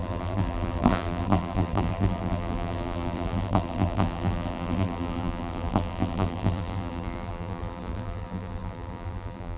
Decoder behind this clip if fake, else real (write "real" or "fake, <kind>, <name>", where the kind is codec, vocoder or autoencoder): fake, vocoder, BigVGAN v2